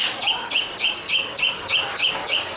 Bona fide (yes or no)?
no